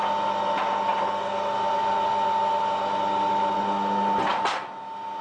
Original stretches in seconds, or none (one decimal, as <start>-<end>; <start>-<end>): 0.0-5.2